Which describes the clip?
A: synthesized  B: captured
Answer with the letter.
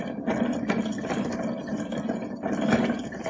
B